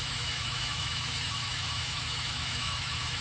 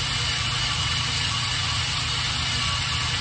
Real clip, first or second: second